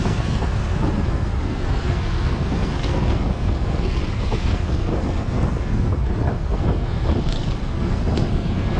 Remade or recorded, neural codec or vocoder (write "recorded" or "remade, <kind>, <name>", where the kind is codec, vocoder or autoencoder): remade, codec, SNAC